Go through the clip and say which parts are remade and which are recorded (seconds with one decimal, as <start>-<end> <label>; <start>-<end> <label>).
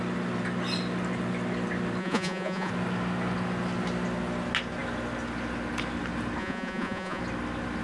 0.0-2.0 recorded; 2.0-2.7 remade; 2.7-6.4 recorded; 6.4-7.2 remade; 7.2-7.8 recorded